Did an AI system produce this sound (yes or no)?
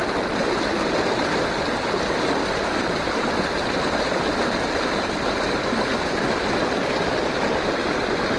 no